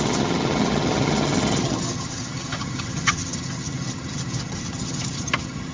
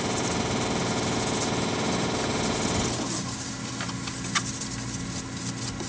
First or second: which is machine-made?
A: first